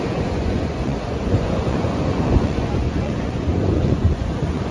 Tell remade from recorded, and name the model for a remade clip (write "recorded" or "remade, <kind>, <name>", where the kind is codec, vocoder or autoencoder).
remade, vocoder, Vocos